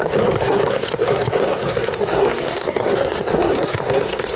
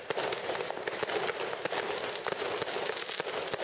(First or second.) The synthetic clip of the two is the first